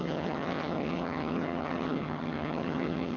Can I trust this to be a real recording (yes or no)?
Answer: no